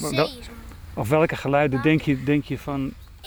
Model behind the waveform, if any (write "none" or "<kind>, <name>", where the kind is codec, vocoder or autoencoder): none